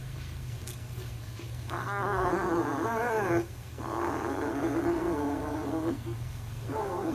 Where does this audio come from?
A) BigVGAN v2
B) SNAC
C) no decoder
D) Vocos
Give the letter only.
B